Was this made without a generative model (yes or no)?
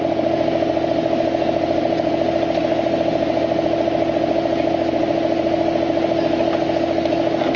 yes